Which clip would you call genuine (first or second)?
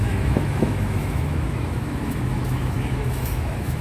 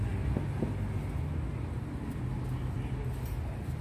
second